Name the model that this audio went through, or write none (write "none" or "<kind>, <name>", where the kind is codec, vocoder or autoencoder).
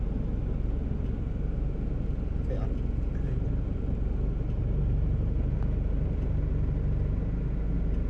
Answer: none